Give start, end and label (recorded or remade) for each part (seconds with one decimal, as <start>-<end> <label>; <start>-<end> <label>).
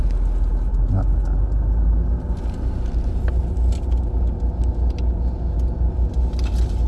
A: 0.0-6.9 recorded